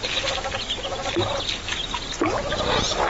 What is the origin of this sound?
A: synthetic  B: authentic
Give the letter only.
B